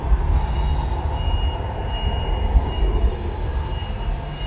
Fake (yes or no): no